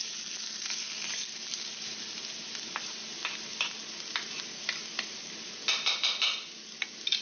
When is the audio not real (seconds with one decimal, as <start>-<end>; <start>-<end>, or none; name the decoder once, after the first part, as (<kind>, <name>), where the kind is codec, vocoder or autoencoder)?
none